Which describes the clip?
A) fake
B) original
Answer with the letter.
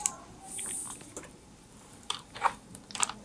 A